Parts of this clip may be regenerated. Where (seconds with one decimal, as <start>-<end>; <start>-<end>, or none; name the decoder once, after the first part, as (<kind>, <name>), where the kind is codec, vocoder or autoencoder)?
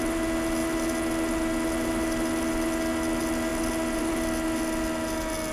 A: none